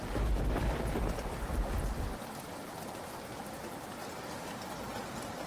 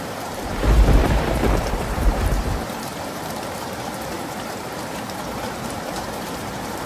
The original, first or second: first